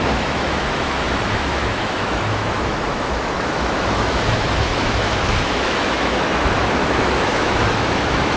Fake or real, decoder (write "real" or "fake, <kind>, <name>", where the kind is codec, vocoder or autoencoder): fake, autoencoder, DAC-VAE